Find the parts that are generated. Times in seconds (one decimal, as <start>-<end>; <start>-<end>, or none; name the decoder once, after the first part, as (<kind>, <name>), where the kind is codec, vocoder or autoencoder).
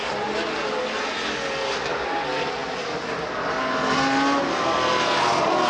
none